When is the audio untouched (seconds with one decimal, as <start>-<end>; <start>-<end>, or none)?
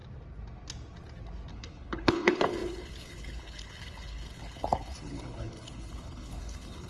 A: 0.0-1.5